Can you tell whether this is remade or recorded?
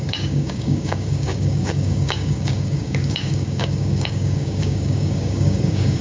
remade